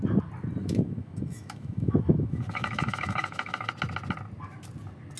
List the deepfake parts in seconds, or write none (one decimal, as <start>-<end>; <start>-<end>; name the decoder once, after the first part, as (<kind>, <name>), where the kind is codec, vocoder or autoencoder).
0.6-3.7 (autoencoder, DAC-VAE)

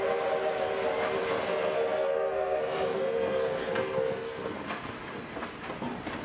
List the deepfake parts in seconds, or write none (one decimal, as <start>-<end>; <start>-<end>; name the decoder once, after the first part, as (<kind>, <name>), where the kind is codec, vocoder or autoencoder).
1.3-4.9 (codec, SNAC)

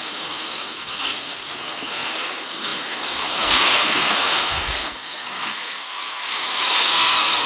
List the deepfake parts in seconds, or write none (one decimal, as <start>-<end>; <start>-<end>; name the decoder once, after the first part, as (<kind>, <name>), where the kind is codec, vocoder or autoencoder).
0.0-7.5 (codec, SNAC)